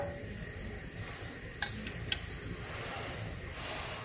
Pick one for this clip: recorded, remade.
recorded